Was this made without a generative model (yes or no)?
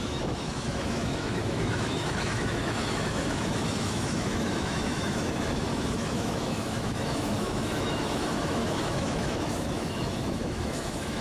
no